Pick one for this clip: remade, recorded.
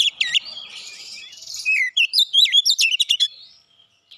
remade